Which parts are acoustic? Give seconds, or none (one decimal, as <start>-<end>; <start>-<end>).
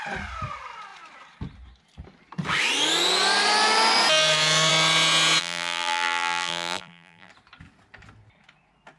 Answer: 0.0-5.4; 7.3-9.0